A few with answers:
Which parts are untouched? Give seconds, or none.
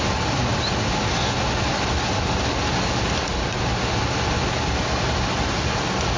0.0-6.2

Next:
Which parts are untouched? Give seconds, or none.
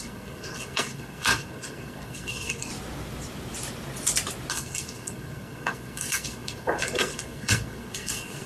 2.7-4.5